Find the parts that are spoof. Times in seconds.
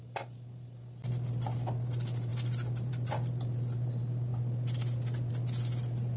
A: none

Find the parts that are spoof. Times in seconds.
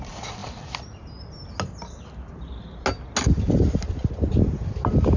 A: none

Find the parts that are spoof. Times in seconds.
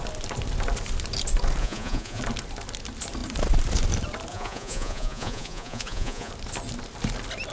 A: 1.6-2.2; 4.3-6.3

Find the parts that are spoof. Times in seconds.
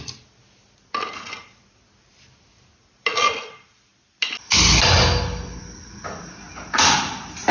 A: none